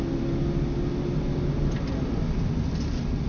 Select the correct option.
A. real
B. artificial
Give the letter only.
A